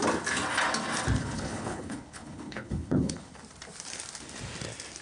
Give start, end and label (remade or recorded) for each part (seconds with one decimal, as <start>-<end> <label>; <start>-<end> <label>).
0.0-1.2 recorded; 1.2-3.4 remade; 3.4-5.0 recorded